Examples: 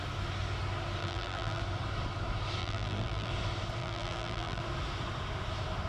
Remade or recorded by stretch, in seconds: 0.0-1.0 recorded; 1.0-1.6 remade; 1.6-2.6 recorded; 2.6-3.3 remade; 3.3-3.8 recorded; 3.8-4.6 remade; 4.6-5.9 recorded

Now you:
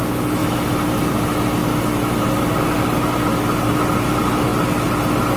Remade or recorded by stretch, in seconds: 0.0-5.4 remade

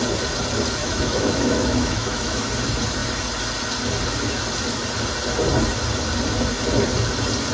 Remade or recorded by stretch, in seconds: 0.0-0.8 recorded; 0.8-2.5 remade; 2.5-7.5 recorded

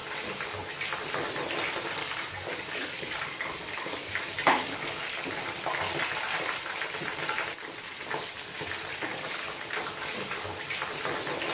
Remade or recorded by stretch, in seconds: 0.0-2.0 recorded; 2.0-5.0 remade; 5.0-8.9 recorded; 8.9-10.7 remade; 10.7-11.5 recorded

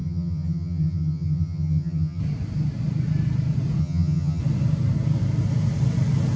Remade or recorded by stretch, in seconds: 0.0-2.2 remade; 2.2-3.8 recorded; 3.8-4.4 remade; 4.4-6.4 recorded